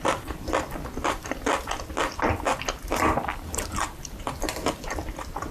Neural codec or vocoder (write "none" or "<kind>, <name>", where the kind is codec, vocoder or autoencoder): none